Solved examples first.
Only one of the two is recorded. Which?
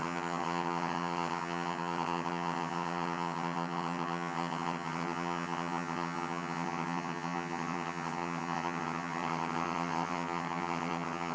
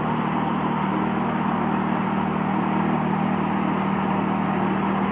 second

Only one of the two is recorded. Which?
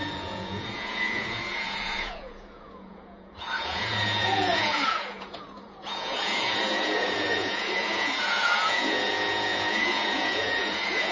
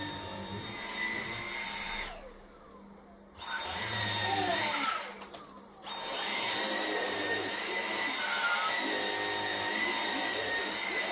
second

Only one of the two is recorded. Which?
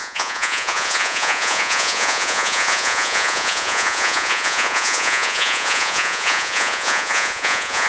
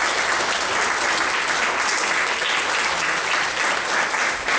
second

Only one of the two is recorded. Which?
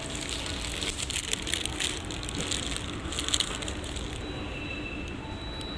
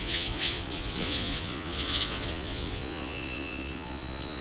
first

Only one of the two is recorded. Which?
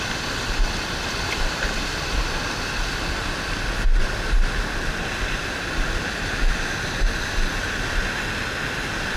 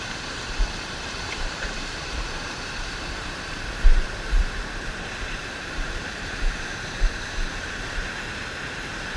first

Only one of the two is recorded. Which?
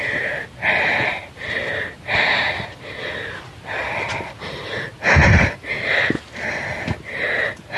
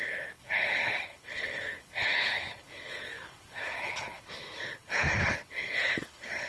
first